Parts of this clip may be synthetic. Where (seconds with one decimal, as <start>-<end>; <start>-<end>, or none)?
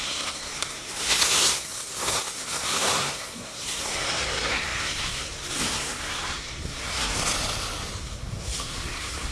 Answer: 0.0-7.2; 8.0-9.3